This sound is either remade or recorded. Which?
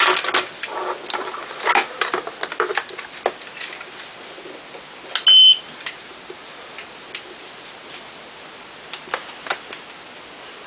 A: recorded